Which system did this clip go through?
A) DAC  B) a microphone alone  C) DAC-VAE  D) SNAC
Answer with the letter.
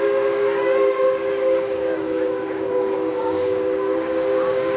A